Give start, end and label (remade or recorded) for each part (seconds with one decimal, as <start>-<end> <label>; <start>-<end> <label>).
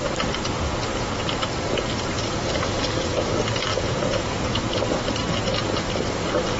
0.0-3.7 recorded; 3.7-4.8 remade; 4.8-6.6 recorded